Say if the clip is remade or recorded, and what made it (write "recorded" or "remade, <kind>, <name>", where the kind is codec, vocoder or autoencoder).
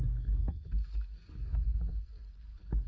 remade, codec, SNAC